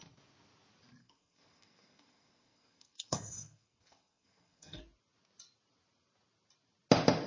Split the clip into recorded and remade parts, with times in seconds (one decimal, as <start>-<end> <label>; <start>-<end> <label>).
0.0-1.0 recorded; 1.0-4.8 remade; 4.8-7.3 recorded